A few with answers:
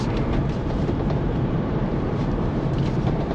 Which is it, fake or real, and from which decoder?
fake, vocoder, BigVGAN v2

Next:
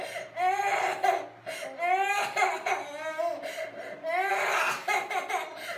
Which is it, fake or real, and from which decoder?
real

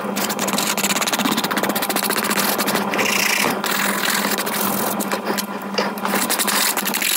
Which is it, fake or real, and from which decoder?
real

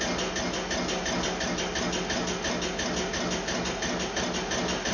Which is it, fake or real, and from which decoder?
real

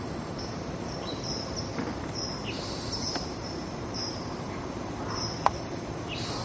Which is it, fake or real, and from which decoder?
fake, vocoder, BigVGAN v2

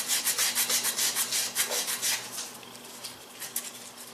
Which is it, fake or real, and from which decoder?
real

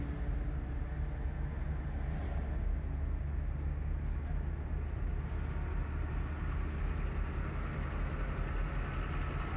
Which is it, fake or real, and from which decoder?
real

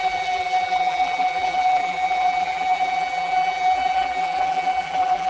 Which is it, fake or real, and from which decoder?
fake, vocoder, BigVGAN v2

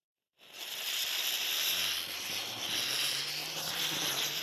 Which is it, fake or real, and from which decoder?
fake, vocoder, BigVGAN v2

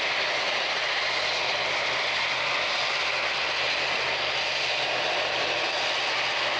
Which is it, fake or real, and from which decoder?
real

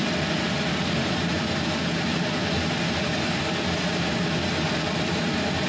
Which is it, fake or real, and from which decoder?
fake, vocoder, BigVGAN v2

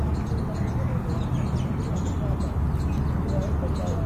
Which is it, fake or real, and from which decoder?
real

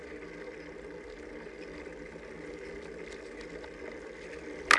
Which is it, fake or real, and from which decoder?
real